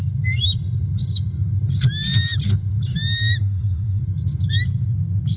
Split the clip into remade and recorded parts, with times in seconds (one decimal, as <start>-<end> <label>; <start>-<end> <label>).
0.0-3.4 recorded; 3.4-4.0 remade; 4.0-5.4 recorded